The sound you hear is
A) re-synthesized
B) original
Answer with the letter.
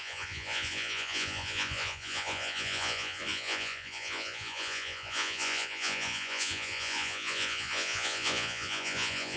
A